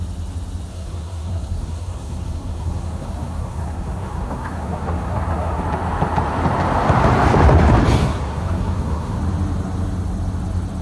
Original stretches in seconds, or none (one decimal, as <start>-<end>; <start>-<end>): 0.0-0.7; 5.6-8.0; 9.2-10.8